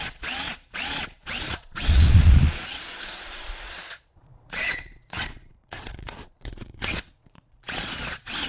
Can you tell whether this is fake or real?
fake